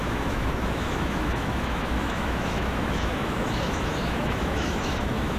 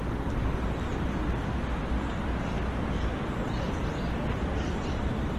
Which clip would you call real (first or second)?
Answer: second